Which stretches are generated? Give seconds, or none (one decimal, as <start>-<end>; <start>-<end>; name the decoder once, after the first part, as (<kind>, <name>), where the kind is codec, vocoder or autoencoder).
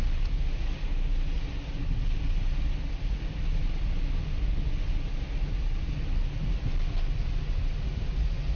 none